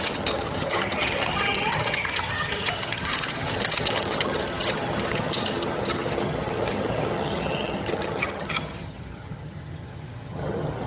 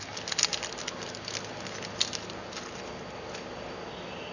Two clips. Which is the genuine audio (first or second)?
second